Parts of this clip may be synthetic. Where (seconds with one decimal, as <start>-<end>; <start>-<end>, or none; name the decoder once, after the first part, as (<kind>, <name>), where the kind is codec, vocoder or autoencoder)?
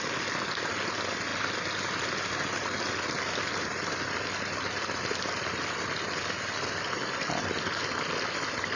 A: none